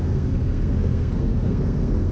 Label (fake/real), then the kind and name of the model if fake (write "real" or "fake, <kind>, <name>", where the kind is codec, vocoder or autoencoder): fake, codec, SNAC